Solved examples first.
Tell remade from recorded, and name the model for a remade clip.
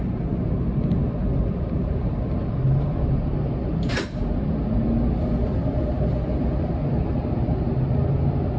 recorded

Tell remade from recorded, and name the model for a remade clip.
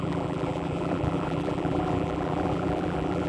remade, vocoder, BigVGAN v2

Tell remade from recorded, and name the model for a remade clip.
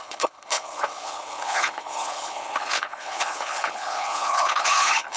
remade, codec, HILCodec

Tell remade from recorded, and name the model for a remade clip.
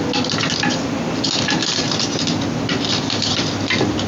recorded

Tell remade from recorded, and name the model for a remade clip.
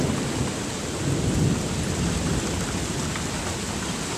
recorded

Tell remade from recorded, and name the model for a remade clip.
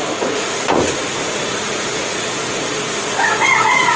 remade, vocoder, Vocos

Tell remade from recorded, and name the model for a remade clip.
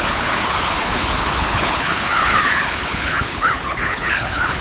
remade, codec, HILCodec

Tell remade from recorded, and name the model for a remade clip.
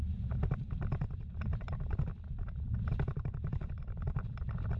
recorded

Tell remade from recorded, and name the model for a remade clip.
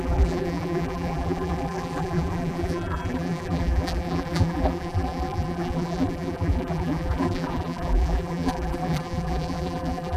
remade, vocoder, BigVGAN v2